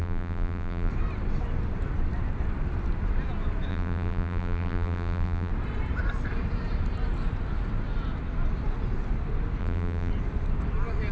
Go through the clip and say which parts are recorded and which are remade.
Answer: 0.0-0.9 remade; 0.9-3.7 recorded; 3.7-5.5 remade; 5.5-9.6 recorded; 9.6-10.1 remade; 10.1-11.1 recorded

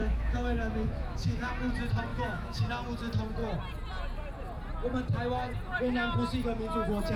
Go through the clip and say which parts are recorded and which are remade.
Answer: 0.0-1.5 remade; 1.5-2.1 recorded; 2.1-2.7 remade; 2.7-7.2 recorded

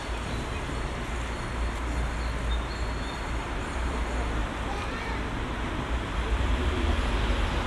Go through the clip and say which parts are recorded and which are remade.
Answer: 0.0-3.4 recorded; 3.4-4.0 remade; 4.0-4.4 recorded; 4.4-6.6 remade; 6.6-7.7 recorded

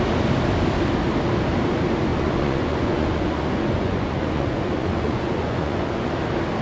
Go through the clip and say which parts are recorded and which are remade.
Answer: 0.0-2.1 recorded; 2.1-6.1 remade; 6.1-6.6 recorded

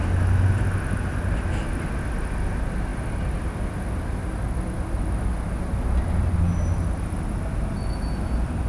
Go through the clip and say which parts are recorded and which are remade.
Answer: 0.0-8.7 recorded

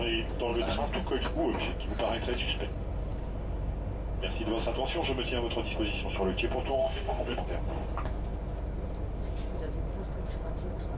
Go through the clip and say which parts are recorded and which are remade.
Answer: 0.0-6.8 recorded; 6.8-7.4 remade; 7.4-11.0 recorded

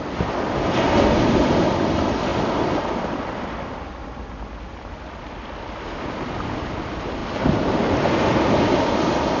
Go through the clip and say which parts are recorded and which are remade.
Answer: 0.0-9.4 recorded

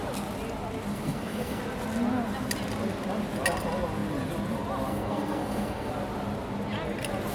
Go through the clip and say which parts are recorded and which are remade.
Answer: 0.0-0.9 recorded; 0.9-1.6 remade; 1.6-4.9 recorded; 4.9-5.9 remade; 5.9-7.3 recorded